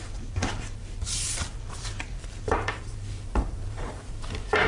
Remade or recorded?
remade